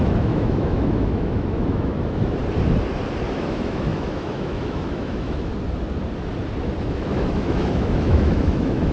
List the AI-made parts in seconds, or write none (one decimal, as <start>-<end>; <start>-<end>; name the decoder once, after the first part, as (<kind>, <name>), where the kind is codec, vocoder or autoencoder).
0.0-2.4 (autoencoder, DAC-VAE); 3.3-5.5; 6.8-8.9